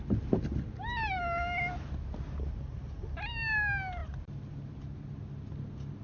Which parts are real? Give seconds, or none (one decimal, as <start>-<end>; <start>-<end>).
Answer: 0.0-6.0